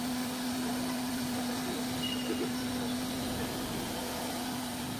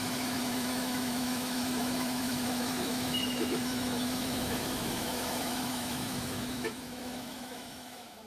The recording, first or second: first